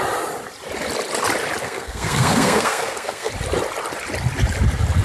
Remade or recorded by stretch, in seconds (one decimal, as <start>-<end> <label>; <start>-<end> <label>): 0.0-1.6 recorded; 1.6-3.3 remade; 3.3-5.0 recorded